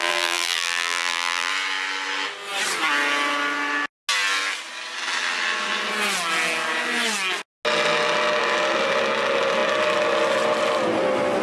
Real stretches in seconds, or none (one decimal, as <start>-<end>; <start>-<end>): 1.5-11.4